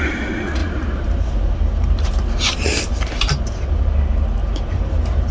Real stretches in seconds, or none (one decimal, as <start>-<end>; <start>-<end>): 0.0-0.6; 3.8-4.4

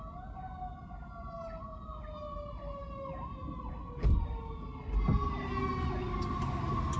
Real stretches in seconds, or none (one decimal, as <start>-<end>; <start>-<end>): 0.0-7.0

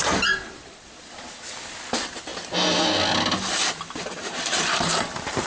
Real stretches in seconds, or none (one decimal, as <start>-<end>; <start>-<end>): 0.0-5.5

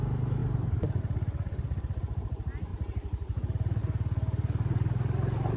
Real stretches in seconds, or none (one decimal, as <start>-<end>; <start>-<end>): 0.0-2.7; 3.8-5.6

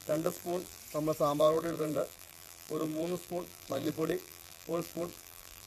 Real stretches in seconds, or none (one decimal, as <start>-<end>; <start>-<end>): 0.8-1.4

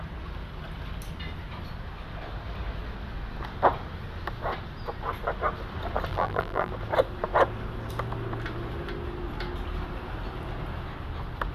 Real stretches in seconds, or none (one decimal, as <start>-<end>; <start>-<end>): 0.0-6.1; 6.7-11.5